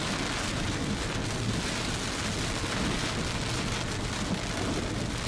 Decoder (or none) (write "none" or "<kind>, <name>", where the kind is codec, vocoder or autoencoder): none